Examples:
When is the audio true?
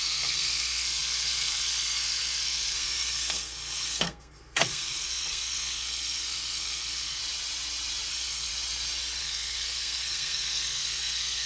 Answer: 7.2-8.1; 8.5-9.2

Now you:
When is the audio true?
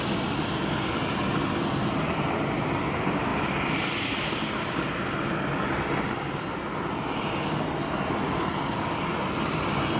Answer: 0.0-10.0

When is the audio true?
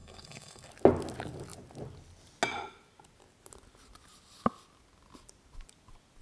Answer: 0.7-6.2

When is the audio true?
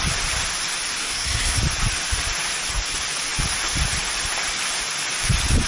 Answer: 0.0-1.0; 1.6-5.7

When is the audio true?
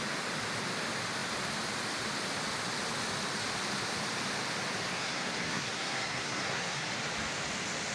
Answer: 0.0-4.9; 6.9-7.9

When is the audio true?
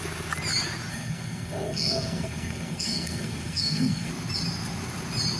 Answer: 0.0-0.9; 4.1-5.4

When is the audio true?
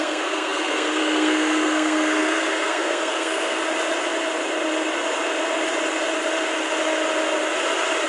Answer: 3.6-8.1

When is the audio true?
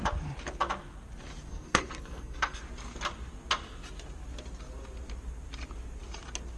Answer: 0.0-1.5; 2.6-6.6